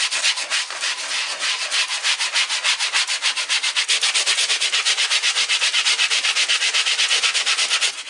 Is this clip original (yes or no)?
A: yes